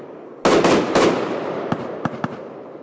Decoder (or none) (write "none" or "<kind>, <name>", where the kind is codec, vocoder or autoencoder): none